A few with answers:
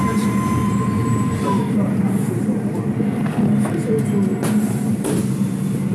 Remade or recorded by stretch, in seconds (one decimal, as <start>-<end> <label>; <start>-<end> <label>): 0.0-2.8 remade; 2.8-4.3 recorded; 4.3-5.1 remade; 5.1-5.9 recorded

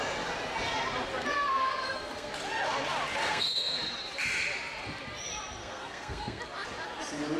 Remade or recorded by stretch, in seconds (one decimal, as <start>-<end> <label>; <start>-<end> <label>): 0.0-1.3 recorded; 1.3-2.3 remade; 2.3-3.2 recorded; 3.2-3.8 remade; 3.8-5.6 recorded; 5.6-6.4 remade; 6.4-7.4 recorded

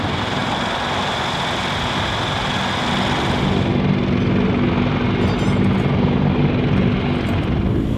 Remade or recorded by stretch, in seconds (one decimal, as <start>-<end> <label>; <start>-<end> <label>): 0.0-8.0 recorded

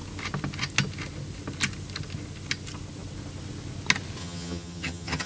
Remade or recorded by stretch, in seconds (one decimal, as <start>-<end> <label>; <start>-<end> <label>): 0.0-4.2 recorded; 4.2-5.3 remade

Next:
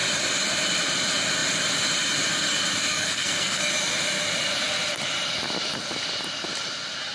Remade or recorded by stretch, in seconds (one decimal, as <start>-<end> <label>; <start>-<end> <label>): 0.0-2.9 recorded; 2.9-3.7 remade; 3.7-7.1 recorded